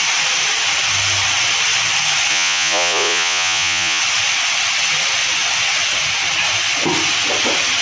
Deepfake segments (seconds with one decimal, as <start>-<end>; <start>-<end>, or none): 2.3-4.0